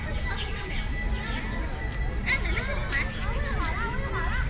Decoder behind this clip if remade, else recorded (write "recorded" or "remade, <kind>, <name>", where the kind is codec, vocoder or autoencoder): recorded